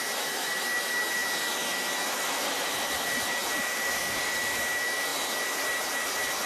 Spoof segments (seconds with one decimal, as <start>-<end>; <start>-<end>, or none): 3.4-4.0